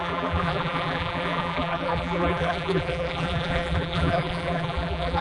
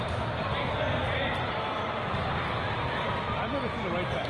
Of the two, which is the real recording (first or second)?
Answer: second